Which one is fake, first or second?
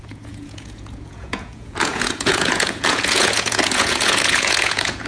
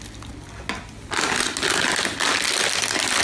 first